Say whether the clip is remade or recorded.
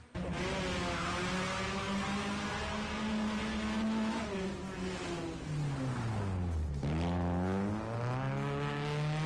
recorded